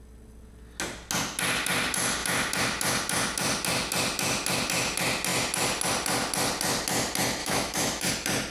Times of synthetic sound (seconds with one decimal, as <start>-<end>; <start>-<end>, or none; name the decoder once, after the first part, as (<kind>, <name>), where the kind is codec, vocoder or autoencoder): 7.4-8.1 (autoencoder, DAC-VAE)